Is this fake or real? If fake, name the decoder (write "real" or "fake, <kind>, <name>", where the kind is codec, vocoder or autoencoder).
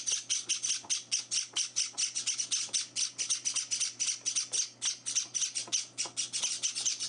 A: real